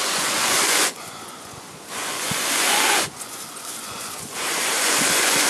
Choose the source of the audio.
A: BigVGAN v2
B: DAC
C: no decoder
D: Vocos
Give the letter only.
D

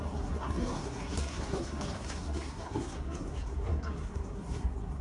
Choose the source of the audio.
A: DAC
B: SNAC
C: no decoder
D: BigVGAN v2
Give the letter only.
B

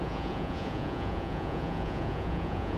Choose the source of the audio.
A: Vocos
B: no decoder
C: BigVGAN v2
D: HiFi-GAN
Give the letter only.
A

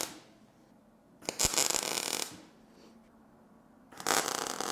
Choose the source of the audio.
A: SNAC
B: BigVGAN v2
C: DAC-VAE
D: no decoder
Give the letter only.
D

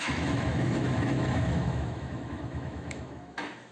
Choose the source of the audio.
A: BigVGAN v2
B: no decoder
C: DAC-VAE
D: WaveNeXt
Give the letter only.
C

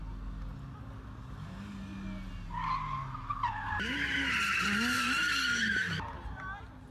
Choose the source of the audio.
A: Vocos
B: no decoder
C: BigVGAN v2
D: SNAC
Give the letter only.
B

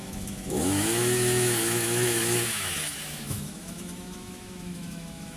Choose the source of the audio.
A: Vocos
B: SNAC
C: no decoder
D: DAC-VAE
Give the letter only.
D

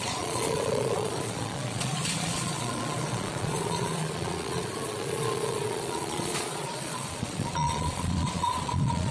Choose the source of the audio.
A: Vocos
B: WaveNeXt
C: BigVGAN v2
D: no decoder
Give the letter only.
A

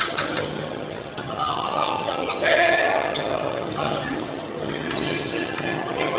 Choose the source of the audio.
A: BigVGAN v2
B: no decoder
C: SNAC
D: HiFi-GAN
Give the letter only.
D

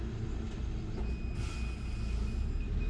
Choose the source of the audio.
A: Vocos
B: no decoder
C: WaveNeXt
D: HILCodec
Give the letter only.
B